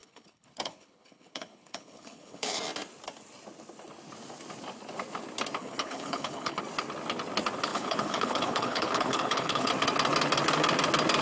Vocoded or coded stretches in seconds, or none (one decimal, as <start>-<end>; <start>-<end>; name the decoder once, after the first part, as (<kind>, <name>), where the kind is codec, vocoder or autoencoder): 0.0-2.6 (codec, HILCodec); 5.6-6.6; 7.7-9.7